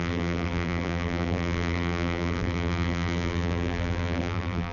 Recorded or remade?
remade